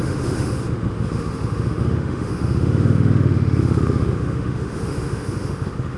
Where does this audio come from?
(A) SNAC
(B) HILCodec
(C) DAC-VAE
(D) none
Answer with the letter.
C